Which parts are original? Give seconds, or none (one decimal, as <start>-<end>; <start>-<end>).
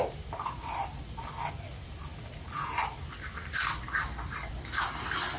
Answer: 0.0-5.4